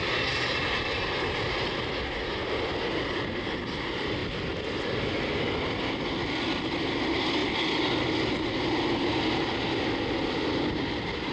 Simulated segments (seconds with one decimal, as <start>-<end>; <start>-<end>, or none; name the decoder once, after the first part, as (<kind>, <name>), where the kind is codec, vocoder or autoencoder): 0.0-1.7 (vocoder, BigVGAN v2)